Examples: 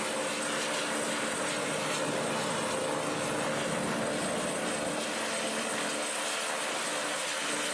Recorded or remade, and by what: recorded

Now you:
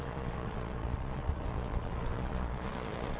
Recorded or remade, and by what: remade, vocoder, Vocos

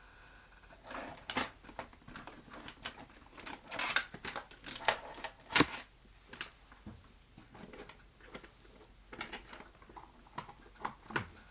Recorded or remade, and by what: recorded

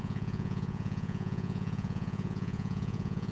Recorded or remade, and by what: remade, vocoder, Vocos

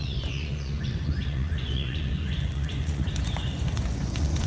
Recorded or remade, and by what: remade, vocoder, Vocos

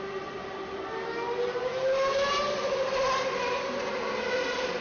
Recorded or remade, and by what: recorded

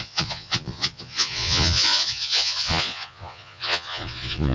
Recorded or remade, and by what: remade, vocoder, Vocos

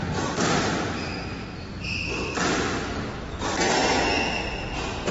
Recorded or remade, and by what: recorded